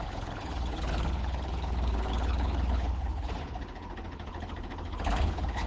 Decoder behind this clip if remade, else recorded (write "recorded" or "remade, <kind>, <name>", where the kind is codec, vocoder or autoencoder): remade, codec, HILCodec